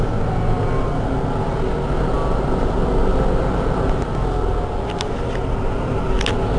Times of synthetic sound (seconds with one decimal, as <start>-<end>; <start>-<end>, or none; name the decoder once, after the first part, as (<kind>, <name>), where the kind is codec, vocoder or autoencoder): none